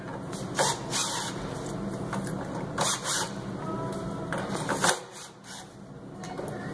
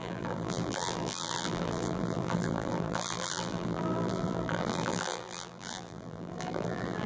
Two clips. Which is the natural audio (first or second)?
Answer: first